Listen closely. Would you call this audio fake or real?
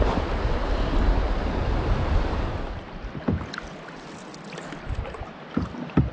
real